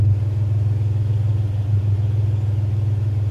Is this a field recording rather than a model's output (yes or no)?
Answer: yes